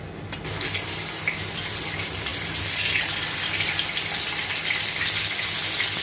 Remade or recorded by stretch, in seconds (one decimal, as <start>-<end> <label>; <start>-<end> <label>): 0.0-6.0 recorded